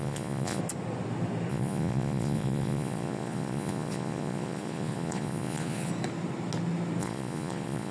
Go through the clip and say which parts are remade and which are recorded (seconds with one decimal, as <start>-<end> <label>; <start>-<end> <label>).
0.0-0.6 remade; 0.6-1.5 recorded; 1.5-5.9 remade; 5.9-7.0 recorded; 7.0-7.9 remade